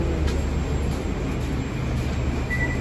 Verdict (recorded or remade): recorded